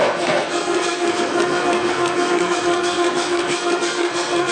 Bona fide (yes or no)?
no